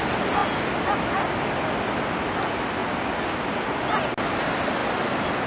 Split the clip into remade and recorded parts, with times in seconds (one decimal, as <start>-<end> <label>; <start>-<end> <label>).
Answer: 0.0-5.5 recorded

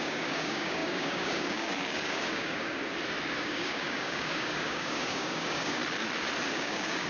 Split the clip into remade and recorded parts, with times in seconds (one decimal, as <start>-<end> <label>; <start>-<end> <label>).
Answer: 0.0-2.8 remade; 2.8-3.4 recorded; 3.4-5.8 remade; 5.8-6.5 recorded; 6.5-7.1 remade

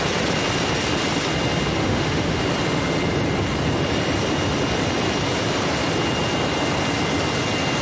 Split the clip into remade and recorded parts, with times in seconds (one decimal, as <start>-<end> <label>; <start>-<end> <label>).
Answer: 0.0-1.8 recorded; 1.8-2.4 remade; 2.4-7.8 recorded

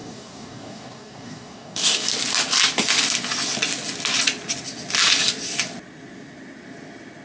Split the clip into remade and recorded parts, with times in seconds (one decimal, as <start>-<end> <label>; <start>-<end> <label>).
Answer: 0.0-2.1 remade; 2.1-7.2 recorded

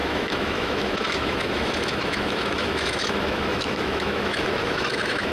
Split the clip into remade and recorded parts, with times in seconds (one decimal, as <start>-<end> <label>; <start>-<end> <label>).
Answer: 0.0-5.3 remade

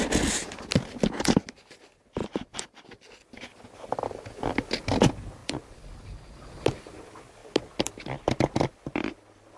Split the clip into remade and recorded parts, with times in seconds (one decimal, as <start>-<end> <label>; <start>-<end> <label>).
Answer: 0.0-2.2 recorded; 2.2-3.2 remade; 3.2-5.4 recorded; 5.4-6.2 remade; 6.2-9.6 recorded